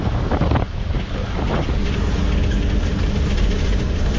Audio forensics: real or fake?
real